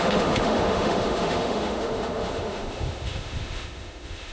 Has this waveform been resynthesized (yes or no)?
yes